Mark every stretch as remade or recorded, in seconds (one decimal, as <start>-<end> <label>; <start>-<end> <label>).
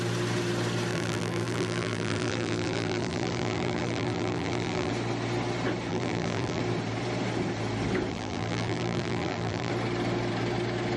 0.0-0.9 recorded; 0.9-4.9 remade; 4.9-5.9 recorded; 5.9-6.6 remade; 6.6-8.1 recorded; 8.1-9.7 remade; 9.7-11.0 recorded